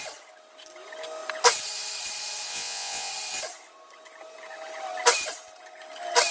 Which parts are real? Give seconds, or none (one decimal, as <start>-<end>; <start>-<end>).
0.0-2.5; 3.1-6.3